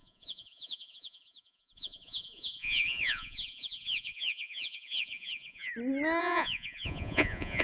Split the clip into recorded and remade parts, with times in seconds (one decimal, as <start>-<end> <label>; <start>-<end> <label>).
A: 0.0-5.7 remade; 5.7-6.2 recorded; 6.2-7.6 remade